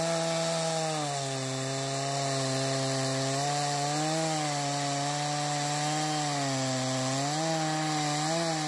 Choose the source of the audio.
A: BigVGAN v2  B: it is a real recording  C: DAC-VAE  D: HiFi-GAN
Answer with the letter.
B